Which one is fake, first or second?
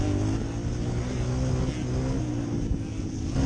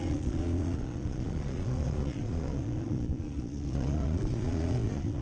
second